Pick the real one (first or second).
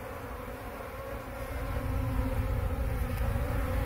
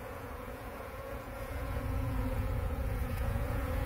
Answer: first